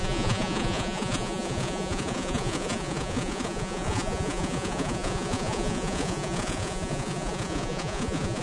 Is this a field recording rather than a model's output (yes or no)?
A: no